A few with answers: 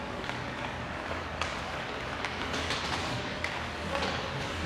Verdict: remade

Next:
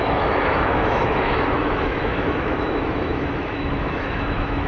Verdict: remade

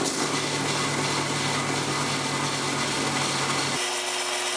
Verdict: recorded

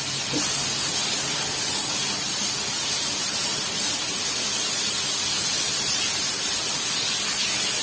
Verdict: recorded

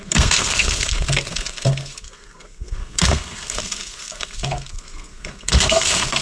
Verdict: remade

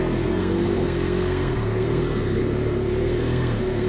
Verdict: remade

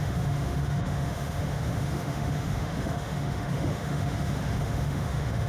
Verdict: remade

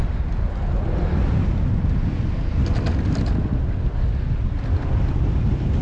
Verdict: remade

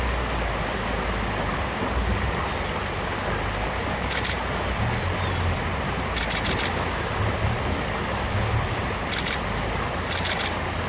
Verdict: recorded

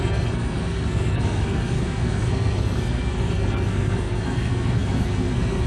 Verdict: remade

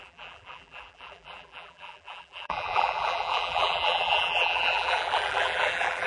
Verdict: remade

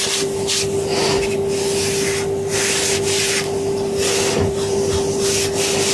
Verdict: recorded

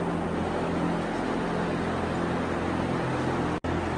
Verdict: recorded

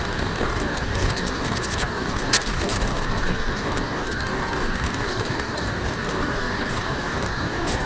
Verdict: remade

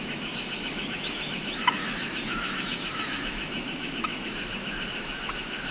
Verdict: remade